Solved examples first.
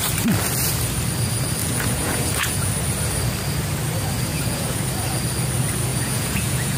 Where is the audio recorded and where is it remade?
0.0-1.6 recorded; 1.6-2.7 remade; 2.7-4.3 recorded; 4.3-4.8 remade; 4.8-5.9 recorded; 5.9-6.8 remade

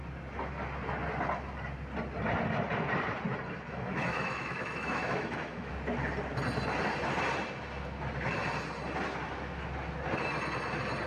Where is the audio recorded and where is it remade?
0.0-3.7 recorded; 3.7-5.7 remade; 5.7-11.1 recorded

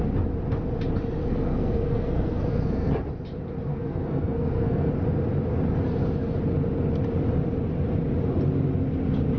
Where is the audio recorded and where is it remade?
0.0-1.2 recorded; 1.2-2.9 remade; 2.9-3.7 recorded; 3.7-4.9 remade; 4.9-9.4 recorded

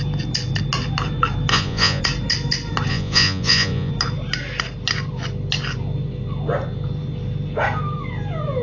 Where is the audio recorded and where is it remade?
0.0-1.5 recorded; 1.5-2.0 remade; 2.0-2.9 recorded; 2.9-3.9 remade; 3.9-8.6 recorded

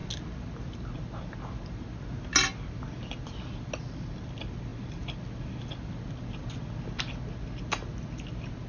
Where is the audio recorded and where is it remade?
0.0-8.7 recorded

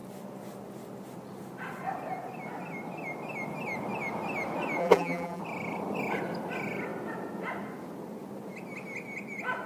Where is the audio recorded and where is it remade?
0.0-4.8 recorded; 4.8-5.4 remade; 5.4-9.7 recorded

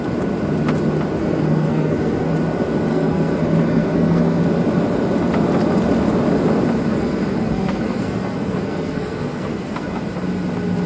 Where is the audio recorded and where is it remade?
0.0-1.2 recorded; 1.2-2.3 remade; 2.3-2.9 recorded; 2.9-4.4 remade; 4.4-6.9 recorded; 6.9-10.0 remade; 10.0-10.9 recorded

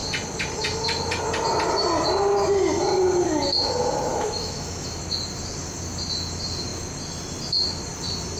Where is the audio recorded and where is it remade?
0.0-4.1 recorded; 4.1-5.0 remade; 5.0-8.4 recorded